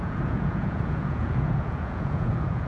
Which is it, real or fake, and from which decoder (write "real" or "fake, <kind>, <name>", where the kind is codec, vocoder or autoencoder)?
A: fake, vocoder, Vocos